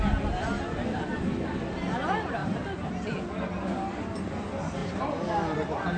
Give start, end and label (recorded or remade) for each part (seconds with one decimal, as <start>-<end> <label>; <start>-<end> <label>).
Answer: 0.0-2.4 recorded; 2.4-2.9 remade; 2.9-6.0 recorded